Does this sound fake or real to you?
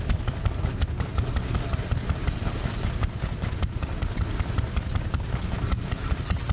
real